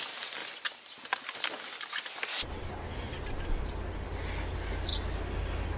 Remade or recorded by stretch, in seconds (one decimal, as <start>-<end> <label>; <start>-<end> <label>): 0.0-5.8 recorded